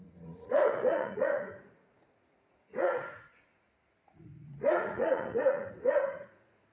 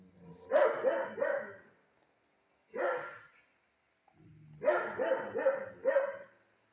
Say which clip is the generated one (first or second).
first